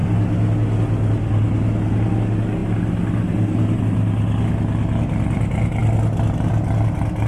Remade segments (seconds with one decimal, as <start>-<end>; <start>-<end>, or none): none